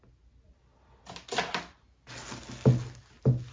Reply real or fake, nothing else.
real